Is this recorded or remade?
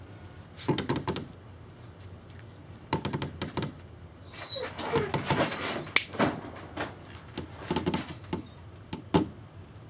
recorded